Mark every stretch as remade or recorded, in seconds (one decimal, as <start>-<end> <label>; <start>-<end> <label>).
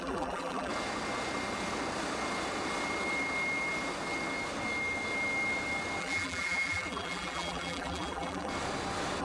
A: 0.0-0.7 remade; 0.7-6.0 recorded; 6.0-8.5 remade; 8.5-9.2 recorded